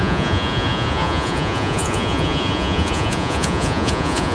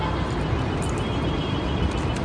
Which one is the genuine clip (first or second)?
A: second